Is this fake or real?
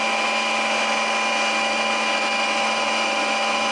real